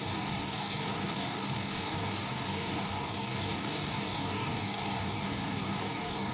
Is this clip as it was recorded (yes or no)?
no